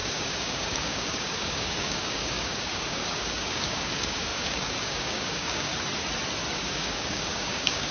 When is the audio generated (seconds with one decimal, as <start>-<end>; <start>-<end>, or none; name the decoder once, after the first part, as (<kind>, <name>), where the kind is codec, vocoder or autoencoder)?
0.0-5.7 (codec, DAC); 6.5-7.9